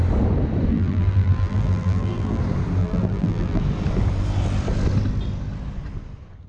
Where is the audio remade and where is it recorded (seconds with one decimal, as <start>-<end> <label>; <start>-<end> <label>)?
0.0-0.7 recorded; 0.7-2.4 remade; 2.4-2.8 recorded; 2.8-3.6 remade; 3.6-6.5 recorded

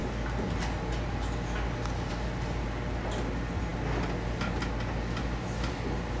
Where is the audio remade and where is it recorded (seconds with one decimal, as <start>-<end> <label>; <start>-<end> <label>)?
0.0-6.2 recorded